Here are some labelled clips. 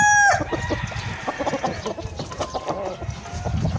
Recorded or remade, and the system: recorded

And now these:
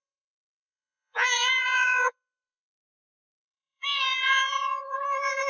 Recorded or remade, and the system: remade, vocoder, Vocos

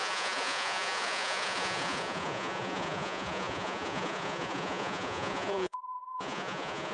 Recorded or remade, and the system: remade, vocoder, Vocos